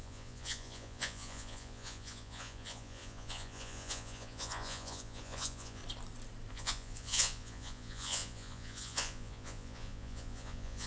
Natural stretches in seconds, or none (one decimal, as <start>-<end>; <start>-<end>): 5.8-6.5

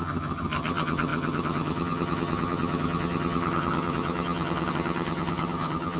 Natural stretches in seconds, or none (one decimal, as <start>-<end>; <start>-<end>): none